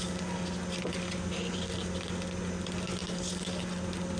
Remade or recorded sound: recorded